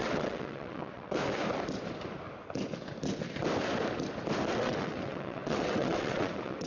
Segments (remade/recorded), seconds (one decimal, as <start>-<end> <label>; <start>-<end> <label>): 0.0-1.2 remade; 1.2-4.5 recorded; 4.5-6.7 remade